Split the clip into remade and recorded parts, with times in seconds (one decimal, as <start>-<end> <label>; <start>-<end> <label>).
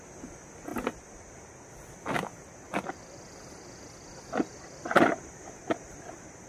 0.0-6.5 recorded